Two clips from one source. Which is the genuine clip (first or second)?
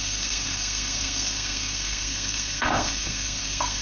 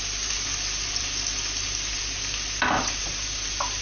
second